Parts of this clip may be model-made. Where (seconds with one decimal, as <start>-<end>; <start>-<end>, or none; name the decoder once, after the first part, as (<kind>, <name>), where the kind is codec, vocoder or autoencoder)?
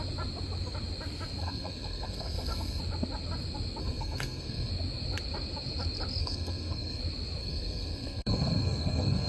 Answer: 1.4-2.8 (codec, SNAC); 3.8-4.7; 6.2-7.0; 7.4-9.3